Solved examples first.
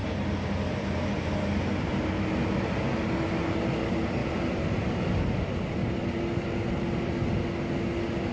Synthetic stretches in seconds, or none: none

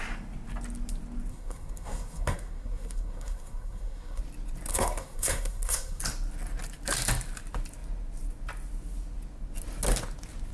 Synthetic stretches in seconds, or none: 1.3-4.2 (codec, SNAC); 4.7-6.0

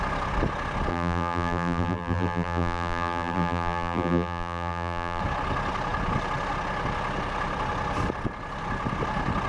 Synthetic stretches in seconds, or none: 0.9-5.2 (vocoder, BigVGAN v2)

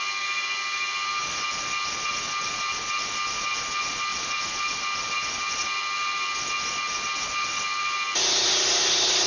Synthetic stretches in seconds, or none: 4.1-4.8 (vocoder, BigVGAN v2)

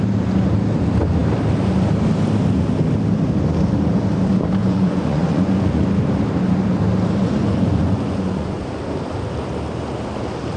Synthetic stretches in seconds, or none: 4.6-5.8 (vocoder, Vocos); 7.2-8.6

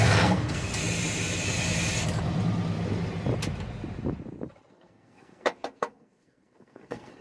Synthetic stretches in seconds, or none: 0.0-0.7 (codec, SNAC); 4.7-7.2

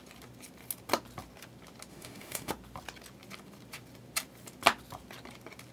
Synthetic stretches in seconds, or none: 1.9-2.5 (autoencoder, DAC-VAE)